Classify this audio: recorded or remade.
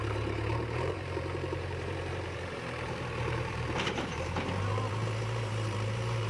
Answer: remade